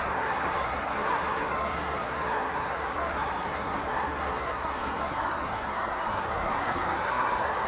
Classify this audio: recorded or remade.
remade